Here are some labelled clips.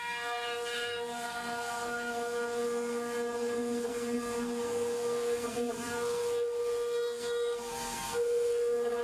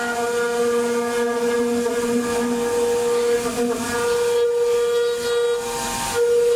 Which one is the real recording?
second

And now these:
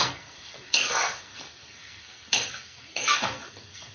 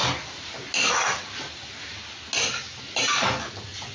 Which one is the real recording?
second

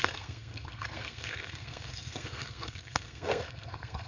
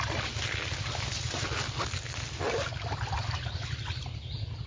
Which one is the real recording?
second